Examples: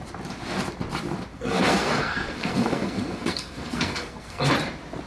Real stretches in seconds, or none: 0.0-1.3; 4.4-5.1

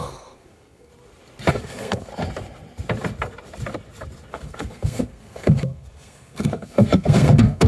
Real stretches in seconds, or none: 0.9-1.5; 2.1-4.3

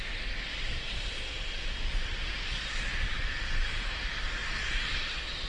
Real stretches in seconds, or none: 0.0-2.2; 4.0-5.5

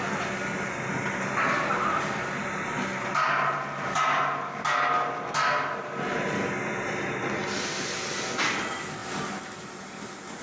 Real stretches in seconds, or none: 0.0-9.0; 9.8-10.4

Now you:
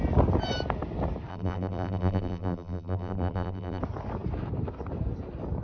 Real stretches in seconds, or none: 0.0-1.3; 3.8-5.6

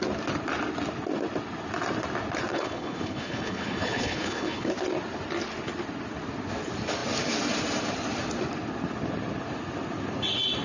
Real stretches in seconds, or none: 0.0-2.5; 4.7-10.6

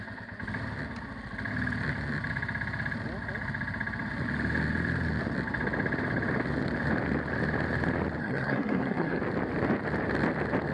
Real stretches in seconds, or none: 0.0-8.2; 9.2-10.7